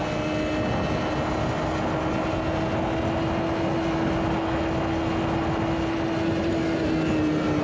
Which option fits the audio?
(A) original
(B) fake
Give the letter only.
A